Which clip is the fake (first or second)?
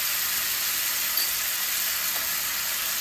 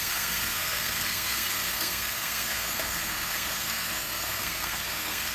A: second